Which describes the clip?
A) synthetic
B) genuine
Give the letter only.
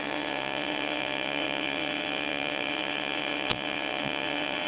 A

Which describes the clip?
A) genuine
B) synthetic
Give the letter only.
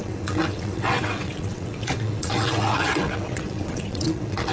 B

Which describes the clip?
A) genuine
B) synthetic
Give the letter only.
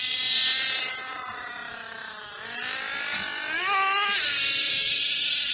A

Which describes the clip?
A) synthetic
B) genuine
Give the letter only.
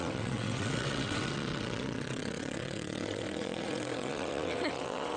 A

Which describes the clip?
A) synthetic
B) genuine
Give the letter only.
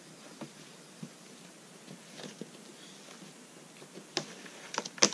B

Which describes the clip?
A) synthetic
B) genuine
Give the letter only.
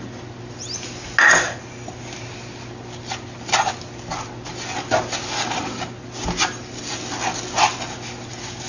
B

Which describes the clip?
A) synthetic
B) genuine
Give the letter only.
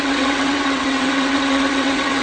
A